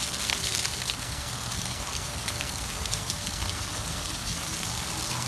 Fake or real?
fake